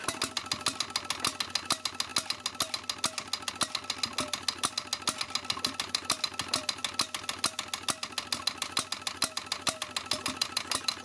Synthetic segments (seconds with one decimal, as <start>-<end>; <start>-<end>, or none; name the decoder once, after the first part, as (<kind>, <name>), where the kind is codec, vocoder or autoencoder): none